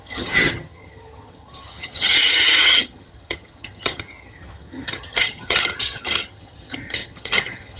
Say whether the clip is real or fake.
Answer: fake